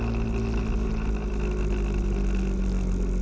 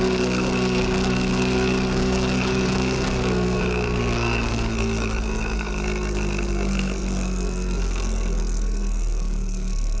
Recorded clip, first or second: first